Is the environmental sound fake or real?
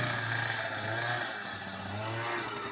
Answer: real